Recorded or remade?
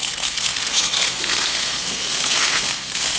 remade